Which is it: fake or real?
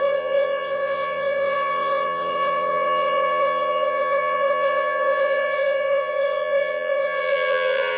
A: fake